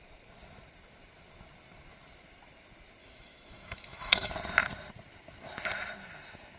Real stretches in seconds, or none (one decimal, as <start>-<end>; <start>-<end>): 0.0-3.0; 4.3-6.6